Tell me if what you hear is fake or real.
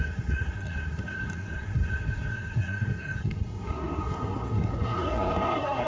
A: fake